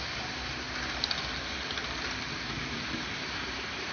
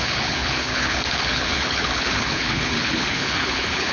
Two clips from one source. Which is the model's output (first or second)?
second